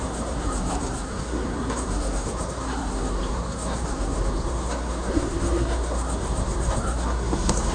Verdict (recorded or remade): remade